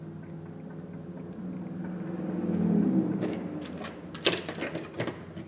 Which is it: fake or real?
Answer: real